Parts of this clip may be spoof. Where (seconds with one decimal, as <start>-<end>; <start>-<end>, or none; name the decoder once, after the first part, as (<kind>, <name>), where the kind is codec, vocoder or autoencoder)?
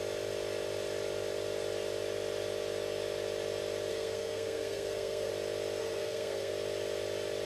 3.9-5.3 (codec, SNAC); 5.8-6.5